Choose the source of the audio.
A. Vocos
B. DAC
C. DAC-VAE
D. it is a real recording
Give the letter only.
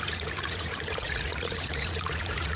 A